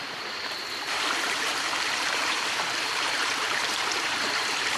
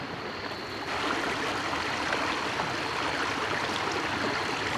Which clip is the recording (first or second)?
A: second